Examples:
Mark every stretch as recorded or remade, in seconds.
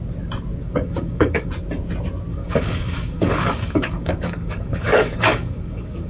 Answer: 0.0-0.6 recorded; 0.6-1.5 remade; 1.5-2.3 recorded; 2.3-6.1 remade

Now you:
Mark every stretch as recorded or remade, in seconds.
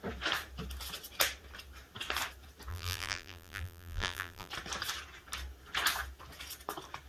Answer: 0.0-2.7 recorded; 2.7-4.5 remade; 4.5-7.1 recorded